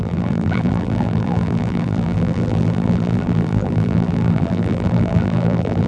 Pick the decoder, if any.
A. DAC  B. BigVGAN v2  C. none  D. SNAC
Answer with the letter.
B